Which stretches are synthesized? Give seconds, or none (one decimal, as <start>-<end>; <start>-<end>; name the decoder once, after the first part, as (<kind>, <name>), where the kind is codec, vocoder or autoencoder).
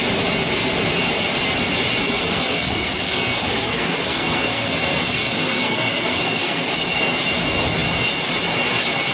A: 2.0-7.0 (codec, SNAC)